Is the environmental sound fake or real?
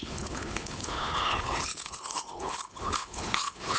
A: fake